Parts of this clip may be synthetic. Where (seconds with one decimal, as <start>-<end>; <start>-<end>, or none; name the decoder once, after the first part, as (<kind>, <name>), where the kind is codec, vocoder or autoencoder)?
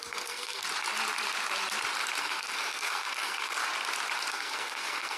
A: 0.0-0.6 (codec, SNAC); 2.2-3.6; 4.3-5.2